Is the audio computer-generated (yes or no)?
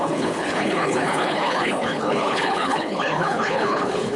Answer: yes